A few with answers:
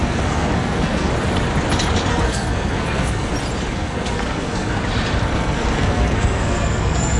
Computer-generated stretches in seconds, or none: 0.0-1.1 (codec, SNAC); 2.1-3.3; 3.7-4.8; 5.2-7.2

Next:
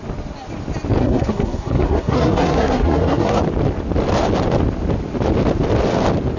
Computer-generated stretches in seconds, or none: 1.0-3.4 (codec, SNAC)

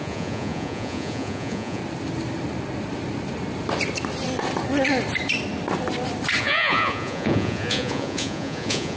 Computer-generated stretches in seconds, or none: 0.0-1.8 (vocoder, Vocos); 6.4-9.0

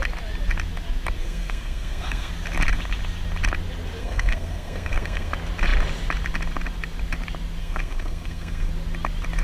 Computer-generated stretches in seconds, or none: 1.2-2.3 (codec, SNAC); 4.0-5.3; 7.6-8.7